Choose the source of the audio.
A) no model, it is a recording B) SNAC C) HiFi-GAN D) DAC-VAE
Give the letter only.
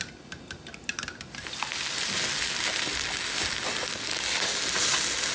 A